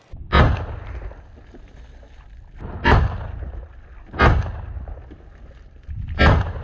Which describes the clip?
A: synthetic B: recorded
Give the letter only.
B